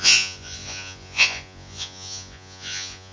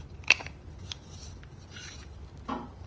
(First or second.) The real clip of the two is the second